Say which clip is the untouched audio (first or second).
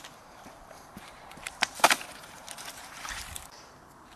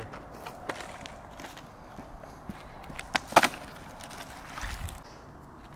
second